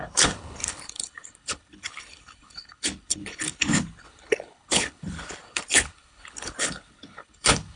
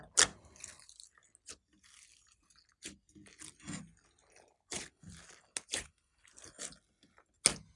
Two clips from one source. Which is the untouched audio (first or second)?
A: second